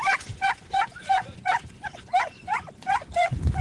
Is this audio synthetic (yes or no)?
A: yes